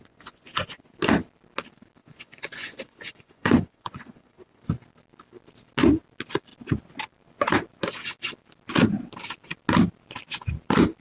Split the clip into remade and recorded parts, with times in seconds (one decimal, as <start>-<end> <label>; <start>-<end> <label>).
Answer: 0.0-0.9 remade; 0.9-2.0 recorded; 2.0-4.6 remade; 4.6-11.0 recorded